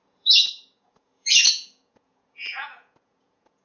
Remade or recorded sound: remade